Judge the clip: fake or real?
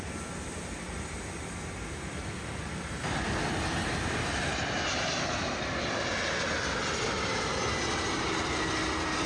real